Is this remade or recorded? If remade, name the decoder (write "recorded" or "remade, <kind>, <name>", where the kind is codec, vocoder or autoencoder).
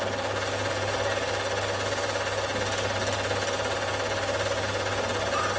recorded